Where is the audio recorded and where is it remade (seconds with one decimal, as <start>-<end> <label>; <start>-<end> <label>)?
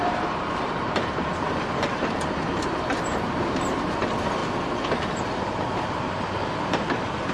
0.0-1.3 remade; 1.3-1.9 recorded; 1.9-4.4 remade; 4.4-5.4 recorded; 5.4-7.3 remade